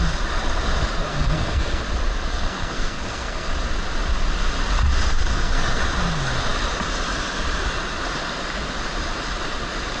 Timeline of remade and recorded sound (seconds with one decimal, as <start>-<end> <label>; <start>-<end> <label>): 0.0-1.1 recorded; 1.1-1.8 remade; 1.8-2.3 recorded; 2.3-3.5 remade; 3.5-5.3 recorded; 5.3-5.8 remade; 5.8-10.0 recorded

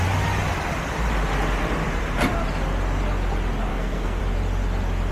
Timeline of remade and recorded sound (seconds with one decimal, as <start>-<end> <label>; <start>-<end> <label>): 0.0-3.7 recorded; 3.7-4.2 remade; 4.2-5.1 recorded

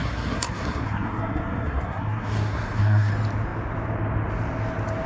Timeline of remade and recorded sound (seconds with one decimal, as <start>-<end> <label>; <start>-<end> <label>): 0.0-3.1 remade; 3.1-5.1 recorded

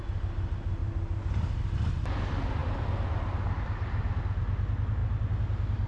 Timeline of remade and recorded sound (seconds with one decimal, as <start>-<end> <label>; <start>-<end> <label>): 0.0-5.9 recorded

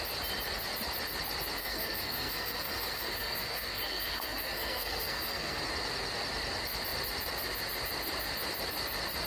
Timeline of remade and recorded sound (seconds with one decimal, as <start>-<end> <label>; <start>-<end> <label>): 0.0-1.6 recorded; 1.6-5.6 remade; 5.6-9.3 recorded